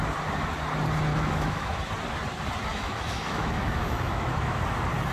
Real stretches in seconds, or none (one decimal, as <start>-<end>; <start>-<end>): 0.0-1.1; 1.8-2.7; 4.6-5.1